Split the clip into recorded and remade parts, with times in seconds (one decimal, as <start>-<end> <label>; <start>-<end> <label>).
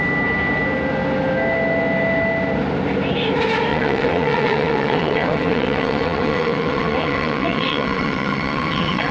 0.0-3.7 recorded; 3.7-9.1 remade